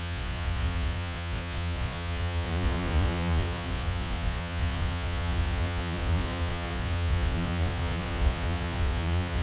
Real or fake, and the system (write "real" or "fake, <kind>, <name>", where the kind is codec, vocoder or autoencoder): fake, vocoder, Vocos